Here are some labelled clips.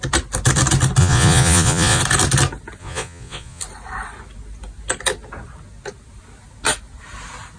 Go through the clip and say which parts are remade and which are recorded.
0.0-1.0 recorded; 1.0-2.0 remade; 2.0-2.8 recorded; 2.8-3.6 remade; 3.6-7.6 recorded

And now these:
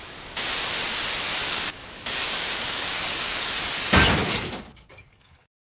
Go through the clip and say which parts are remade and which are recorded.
0.0-1.4 recorded; 1.4-3.5 remade; 3.5-4.2 recorded; 4.2-5.7 remade

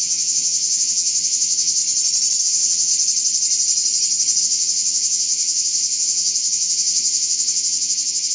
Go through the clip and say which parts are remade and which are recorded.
0.0-1.8 remade; 1.8-2.4 recorded; 2.4-2.9 remade; 2.9-4.4 recorded; 4.4-8.3 remade

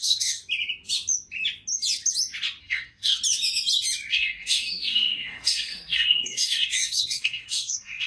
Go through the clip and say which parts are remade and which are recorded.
0.0-0.4 remade; 0.4-2.6 recorded; 2.6-3.2 remade; 3.2-4.1 recorded; 4.1-8.1 remade

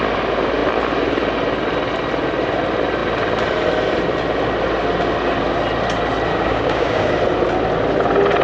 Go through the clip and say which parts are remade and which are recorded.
0.0-6.3 recorded; 6.3-7.1 remade; 7.1-8.4 recorded